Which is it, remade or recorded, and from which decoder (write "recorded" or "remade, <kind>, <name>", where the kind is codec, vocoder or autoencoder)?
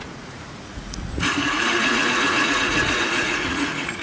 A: remade, vocoder, Vocos